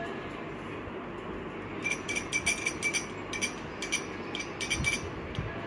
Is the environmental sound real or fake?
real